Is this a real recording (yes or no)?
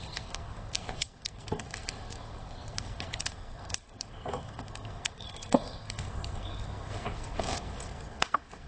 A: no